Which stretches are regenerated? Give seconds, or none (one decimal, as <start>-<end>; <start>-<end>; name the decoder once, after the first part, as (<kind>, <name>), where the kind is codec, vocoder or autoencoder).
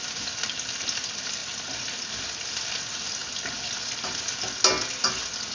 none